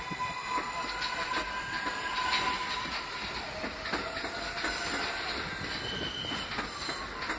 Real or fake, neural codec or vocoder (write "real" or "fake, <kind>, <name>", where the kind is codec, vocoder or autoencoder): real